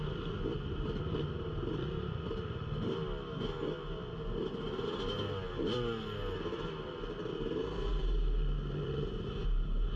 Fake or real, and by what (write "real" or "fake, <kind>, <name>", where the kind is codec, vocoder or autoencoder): real